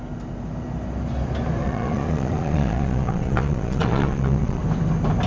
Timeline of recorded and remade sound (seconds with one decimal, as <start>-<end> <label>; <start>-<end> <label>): 0.0-1.6 recorded; 1.6-4.6 remade; 4.6-5.3 recorded